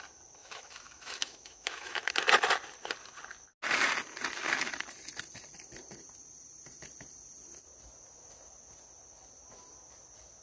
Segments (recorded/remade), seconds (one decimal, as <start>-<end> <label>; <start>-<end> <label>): 0.0-0.4 recorded; 0.4-2.1 remade; 2.1-10.4 recorded